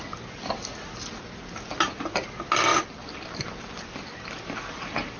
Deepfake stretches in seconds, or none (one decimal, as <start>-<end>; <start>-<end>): none